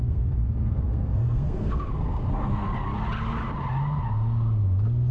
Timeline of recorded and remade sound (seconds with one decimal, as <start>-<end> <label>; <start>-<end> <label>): 0.0-2.7 remade; 2.7-5.1 recorded